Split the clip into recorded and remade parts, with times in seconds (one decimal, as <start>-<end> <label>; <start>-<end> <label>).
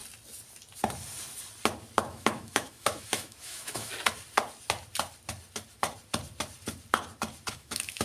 0.0-2.0 recorded; 2.0-3.9 remade; 3.9-7.5 recorded; 7.5-8.0 remade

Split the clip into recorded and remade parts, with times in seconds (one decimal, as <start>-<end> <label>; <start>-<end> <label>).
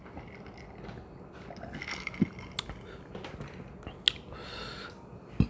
0.0-5.5 recorded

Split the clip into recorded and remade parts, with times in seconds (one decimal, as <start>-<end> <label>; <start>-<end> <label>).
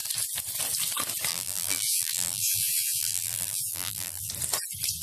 0.0-1.3 recorded; 1.3-4.3 remade; 4.3-5.0 recorded